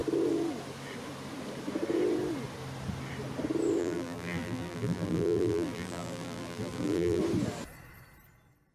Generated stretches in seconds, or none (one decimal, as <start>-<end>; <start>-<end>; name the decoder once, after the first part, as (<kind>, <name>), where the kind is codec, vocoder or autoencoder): 3.8-7.2 (vocoder, BigVGAN v2)